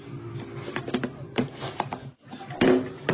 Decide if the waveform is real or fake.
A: real